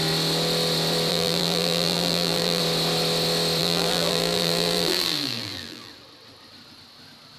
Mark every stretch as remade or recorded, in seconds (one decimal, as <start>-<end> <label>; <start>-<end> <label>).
0.0-1.1 recorded; 1.1-2.6 remade; 2.6-3.6 recorded; 3.6-5.9 remade; 5.9-7.4 recorded